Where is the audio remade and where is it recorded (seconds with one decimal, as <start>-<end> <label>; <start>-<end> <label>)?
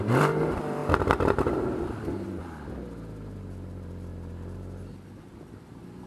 0.0-0.8 remade; 0.8-1.5 recorded; 1.5-4.1 remade; 4.1-5.2 recorded; 5.2-6.1 remade